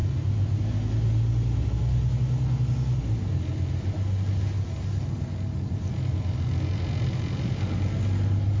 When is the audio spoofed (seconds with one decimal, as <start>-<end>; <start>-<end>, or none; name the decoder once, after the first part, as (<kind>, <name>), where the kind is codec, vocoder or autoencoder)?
none